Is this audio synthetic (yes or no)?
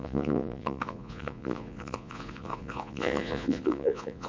yes